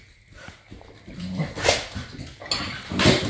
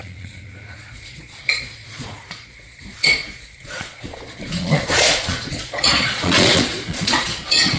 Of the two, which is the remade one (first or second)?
second